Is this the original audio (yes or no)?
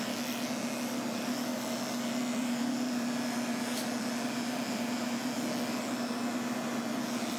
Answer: no